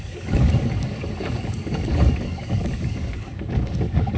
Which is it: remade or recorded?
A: remade